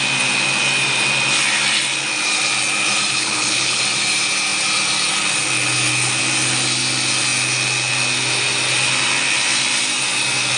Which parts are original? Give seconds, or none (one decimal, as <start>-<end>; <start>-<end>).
0.0-3.1; 3.8-10.6